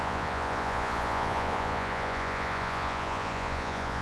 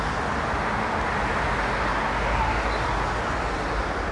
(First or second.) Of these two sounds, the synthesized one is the first